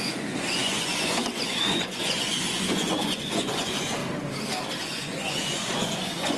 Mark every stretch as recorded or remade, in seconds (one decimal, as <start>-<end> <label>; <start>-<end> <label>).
0.0-4.0 remade; 4.0-4.8 recorded; 4.8-6.4 remade